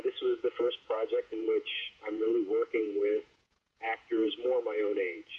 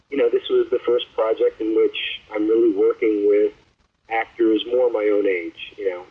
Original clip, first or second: second